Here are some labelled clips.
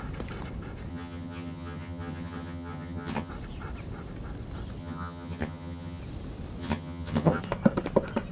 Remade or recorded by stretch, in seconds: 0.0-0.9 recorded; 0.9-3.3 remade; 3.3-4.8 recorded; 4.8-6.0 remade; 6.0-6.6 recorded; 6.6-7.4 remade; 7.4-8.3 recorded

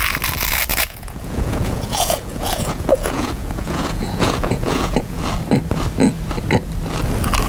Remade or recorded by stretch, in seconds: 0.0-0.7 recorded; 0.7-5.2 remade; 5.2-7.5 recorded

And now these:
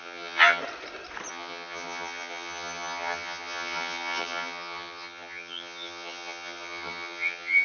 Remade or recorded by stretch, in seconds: 0.0-0.6 remade; 0.6-1.3 recorded; 1.3-7.6 remade